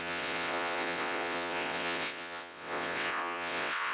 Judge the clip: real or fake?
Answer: fake